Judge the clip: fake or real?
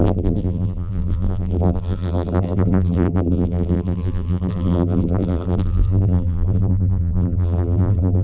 fake